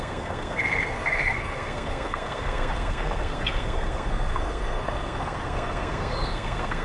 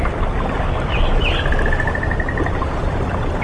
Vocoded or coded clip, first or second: first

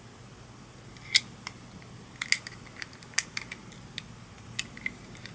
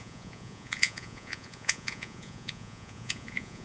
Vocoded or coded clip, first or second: second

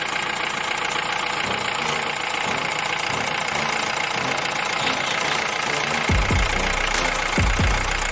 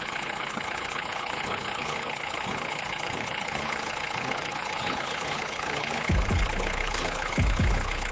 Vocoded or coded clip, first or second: second